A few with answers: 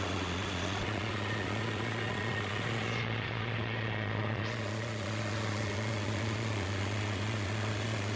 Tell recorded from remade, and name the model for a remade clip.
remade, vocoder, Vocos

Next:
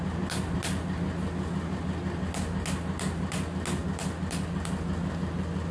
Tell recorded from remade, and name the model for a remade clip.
recorded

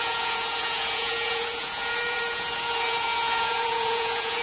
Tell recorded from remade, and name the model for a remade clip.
remade, vocoder, Vocos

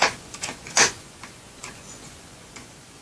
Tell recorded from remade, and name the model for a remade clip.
remade, vocoder, Vocos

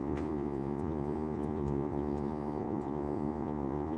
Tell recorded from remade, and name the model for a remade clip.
remade, vocoder, Vocos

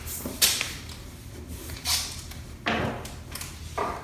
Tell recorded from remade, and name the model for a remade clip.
recorded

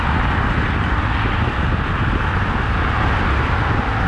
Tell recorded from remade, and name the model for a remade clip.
recorded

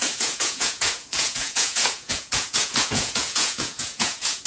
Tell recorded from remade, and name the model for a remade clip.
remade, vocoder, Vocos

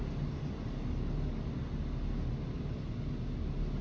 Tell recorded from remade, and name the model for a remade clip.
recorded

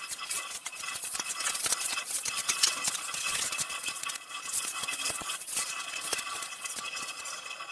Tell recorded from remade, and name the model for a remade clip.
remade, vocoder, Vocos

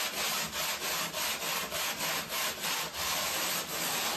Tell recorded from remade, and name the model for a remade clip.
recorded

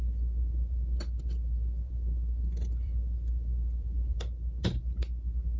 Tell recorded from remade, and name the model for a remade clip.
recorded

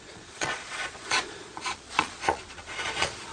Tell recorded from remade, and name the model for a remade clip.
remade, vocoder, Vocos